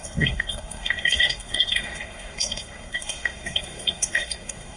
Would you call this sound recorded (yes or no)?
no